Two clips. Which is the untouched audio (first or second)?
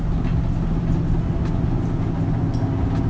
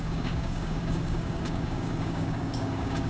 first